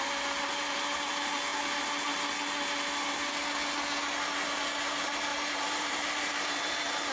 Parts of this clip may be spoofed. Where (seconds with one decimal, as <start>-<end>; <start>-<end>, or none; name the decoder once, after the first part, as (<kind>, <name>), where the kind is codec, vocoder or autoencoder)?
0.5-1.1 (vocoder, BigVGAN v2); 5.3-7.1